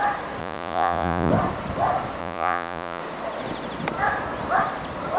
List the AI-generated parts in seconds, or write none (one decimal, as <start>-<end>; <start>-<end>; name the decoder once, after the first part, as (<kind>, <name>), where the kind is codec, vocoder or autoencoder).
0.4-1.3 (vocoder, Vocos); 2.2-3.0